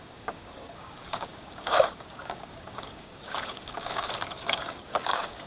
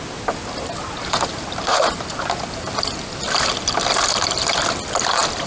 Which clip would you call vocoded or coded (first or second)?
first